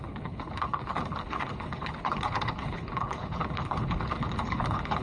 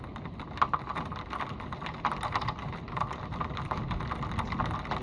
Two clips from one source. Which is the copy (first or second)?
first